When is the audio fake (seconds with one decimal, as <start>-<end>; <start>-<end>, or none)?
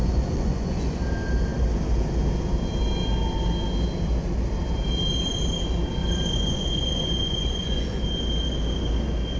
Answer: 0.0-1.0; 6.0-8.0